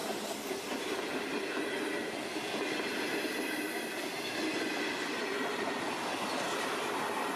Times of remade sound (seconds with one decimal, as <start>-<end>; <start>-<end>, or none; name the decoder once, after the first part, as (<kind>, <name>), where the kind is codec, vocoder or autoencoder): none